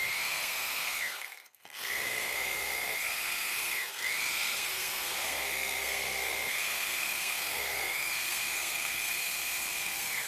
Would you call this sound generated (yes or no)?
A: yes